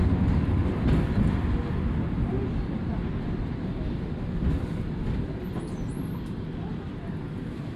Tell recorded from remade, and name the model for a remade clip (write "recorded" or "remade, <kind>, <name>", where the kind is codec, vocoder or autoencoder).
recorded